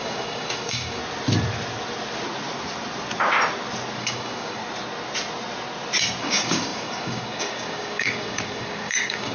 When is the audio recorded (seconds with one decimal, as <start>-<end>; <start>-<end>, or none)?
1.0-4.0; 4.6-6.2